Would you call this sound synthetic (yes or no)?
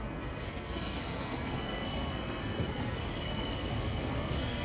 yes